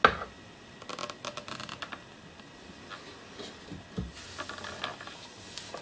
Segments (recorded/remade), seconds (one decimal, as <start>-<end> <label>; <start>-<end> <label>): 0.0-5.8 recorded